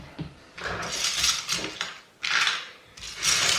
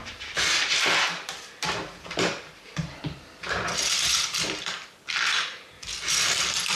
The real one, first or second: first